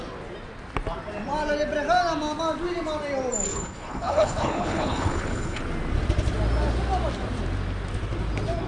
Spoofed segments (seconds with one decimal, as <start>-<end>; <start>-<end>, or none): 3.5-5.6